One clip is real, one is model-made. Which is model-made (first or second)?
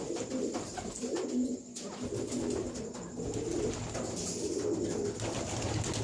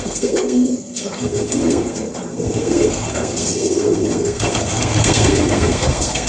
second